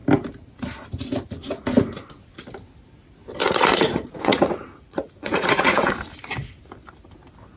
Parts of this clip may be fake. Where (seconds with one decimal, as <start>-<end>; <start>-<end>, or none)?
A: 3.4-5.9